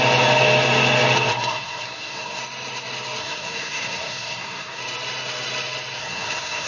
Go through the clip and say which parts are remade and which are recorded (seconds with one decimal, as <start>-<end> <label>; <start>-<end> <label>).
0.0-1.3 recorded; 1.3-2.4 remade; 2.4-3.2 recorded; 3.2-4.8 remade; 4.8-6.0 recorded; 6.0-6.7 remade